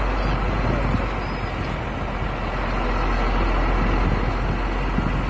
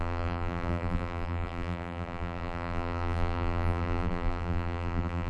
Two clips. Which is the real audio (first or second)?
first